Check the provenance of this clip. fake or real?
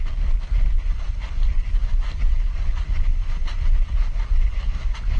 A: real